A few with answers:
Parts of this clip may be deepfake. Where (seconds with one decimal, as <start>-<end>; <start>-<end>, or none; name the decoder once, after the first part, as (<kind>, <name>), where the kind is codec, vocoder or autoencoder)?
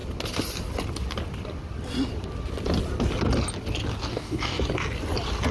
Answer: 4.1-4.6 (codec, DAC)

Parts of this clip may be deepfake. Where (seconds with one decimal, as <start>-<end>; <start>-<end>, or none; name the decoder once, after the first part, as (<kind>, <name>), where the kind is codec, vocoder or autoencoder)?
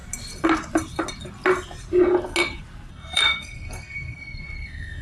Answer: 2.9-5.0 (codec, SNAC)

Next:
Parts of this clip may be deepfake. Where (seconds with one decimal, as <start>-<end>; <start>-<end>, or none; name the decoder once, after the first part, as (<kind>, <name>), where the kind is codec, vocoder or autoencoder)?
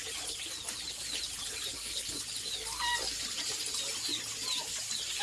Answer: 1.7-2.2 (codec, HILCodec)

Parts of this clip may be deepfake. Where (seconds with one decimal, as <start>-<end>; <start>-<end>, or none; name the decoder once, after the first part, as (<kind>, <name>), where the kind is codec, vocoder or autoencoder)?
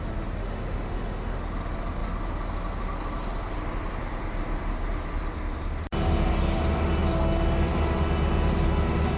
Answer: 0.4-1.4 (autoencoder, DAC-VAE)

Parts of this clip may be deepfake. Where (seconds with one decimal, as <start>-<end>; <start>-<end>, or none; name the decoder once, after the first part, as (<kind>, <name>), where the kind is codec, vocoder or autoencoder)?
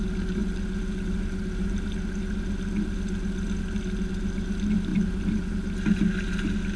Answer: none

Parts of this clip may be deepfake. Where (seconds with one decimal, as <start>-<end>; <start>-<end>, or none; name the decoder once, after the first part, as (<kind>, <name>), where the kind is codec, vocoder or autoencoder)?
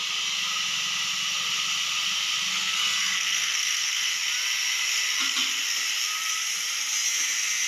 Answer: 2.5-4.2 (codec, SNAC)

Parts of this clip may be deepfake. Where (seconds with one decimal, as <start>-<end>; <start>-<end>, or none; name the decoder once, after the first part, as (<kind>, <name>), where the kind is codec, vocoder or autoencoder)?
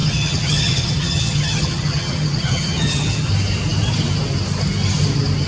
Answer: 0.0-3.3 (vocoder, HiFi-GAN)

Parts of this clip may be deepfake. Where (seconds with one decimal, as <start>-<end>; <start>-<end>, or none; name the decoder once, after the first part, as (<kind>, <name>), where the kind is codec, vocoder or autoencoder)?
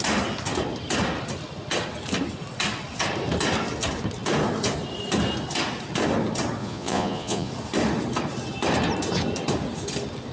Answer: 6.6-7.5 (vocoder, Vocos)